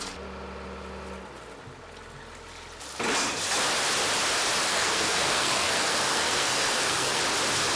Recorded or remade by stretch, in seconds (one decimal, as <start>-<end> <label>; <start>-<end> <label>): 0.0-4.7 recorded; 4.7-7.2 remade; 7.2-7.8 recorded